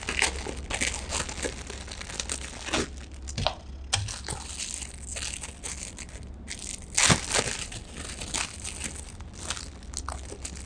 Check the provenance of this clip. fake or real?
real